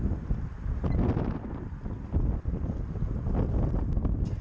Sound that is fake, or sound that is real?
real